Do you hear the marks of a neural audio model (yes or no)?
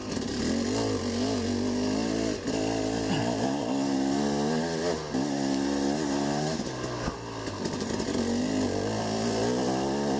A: no